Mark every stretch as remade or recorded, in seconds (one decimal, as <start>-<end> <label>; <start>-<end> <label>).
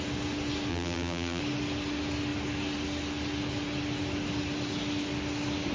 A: 0.0-0.7 recorded; 0.7-1.4 remade; 1.4-5.7 recorded